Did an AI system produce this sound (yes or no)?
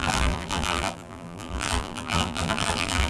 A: yes